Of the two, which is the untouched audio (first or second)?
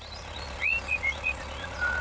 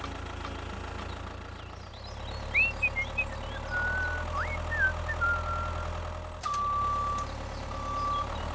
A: second